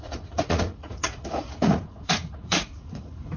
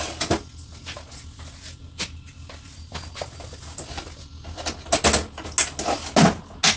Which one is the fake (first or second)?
first